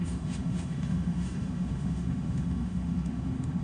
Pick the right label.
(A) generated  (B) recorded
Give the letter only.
A